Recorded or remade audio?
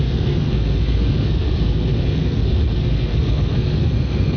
remade